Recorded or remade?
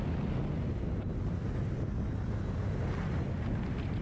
recorded